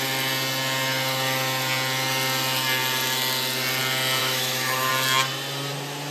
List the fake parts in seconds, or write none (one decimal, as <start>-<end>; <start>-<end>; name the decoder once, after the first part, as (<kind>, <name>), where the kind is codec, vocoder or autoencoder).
4.2-4.9 (autoencoder, DAC-VAE)